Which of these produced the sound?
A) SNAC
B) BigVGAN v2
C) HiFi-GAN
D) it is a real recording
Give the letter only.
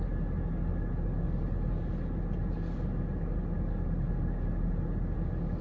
D